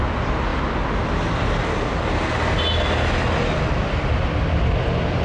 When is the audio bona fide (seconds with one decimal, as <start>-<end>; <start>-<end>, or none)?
0.0-5.2